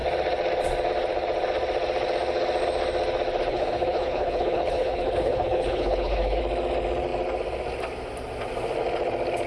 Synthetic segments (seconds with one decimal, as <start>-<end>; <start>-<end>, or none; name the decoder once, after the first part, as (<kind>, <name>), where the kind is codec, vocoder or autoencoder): 3.5-6.4 (codec, HILCodec)